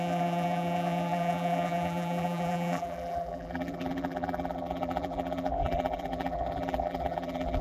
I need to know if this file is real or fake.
fake